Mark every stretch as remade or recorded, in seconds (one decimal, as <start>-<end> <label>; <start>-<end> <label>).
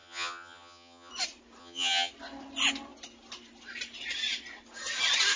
0.0-1.1 remade; 1.1-1.6 recorded; 1.6-2.1 remade; 2.1-5.4 recorded